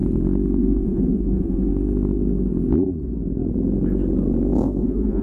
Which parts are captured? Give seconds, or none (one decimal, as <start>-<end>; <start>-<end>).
0.0-0.6; 1.7-4.8